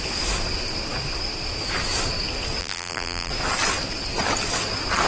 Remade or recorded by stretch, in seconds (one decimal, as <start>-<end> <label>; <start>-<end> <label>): 0.0-2.6 recorded; 2.6-3.3 remade; 3.3-5.1 recorded